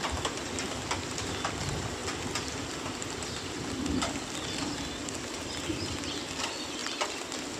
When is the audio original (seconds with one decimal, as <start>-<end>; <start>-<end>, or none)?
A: 0.0-7.6